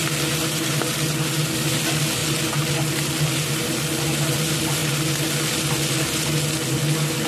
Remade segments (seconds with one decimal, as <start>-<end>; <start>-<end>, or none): none